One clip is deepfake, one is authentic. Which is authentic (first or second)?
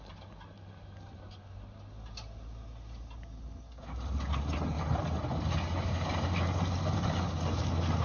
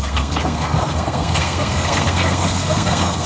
first